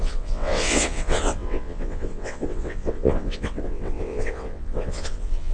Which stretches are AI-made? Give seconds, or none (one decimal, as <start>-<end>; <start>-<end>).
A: 0.0-5.5